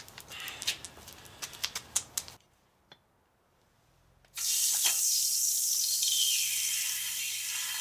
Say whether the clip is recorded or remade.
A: recorded